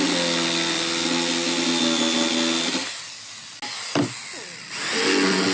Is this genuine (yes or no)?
yes